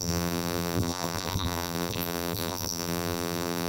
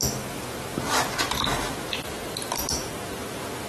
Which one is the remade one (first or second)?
first